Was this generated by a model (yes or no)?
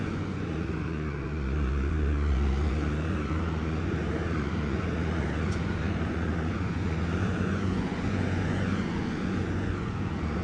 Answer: yes